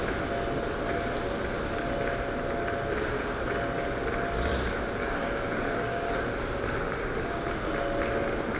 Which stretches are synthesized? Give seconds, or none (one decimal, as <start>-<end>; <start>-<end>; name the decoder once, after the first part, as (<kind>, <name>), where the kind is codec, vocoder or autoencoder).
5.0-6.2 (codec, DAC)